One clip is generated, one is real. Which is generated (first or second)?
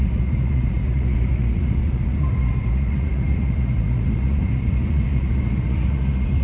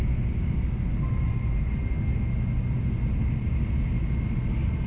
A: first